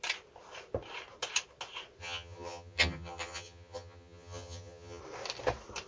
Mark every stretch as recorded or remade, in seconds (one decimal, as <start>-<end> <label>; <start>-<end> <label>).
0.0-2.0 recorded; 2.0-5.0 remade; 5.0-5.9 recorded